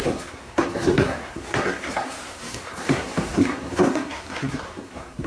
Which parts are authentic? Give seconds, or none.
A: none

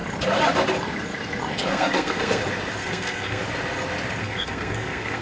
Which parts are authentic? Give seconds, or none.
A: 0.0-1.5; 2.4-2.8; 3.4-4.2

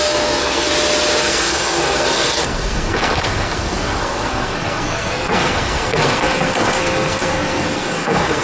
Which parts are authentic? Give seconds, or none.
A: 0.7-1.2